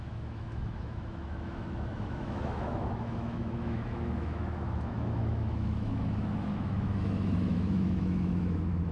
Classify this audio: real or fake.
fake